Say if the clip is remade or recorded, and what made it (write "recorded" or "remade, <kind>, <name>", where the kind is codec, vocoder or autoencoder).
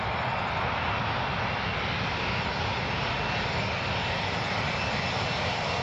recorded